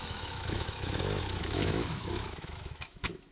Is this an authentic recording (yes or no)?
no